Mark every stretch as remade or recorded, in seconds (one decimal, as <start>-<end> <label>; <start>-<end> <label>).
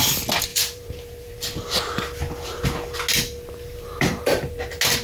0.0-0.5 recorded; 0.5-1.3 remade; 1.3-3.7 recorded; 3.7-4.5 remade; 4.5-5.0 recorded